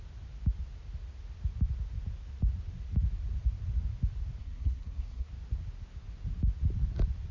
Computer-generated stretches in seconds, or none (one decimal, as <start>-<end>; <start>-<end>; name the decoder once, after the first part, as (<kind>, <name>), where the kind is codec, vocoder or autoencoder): 4.4-5.3 (codec, SNAC)